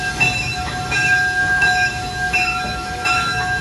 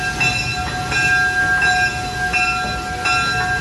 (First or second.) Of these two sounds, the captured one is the second